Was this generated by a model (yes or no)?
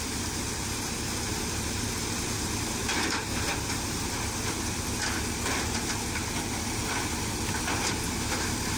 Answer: no